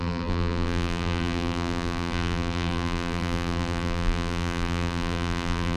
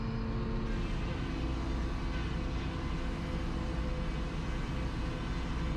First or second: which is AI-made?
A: first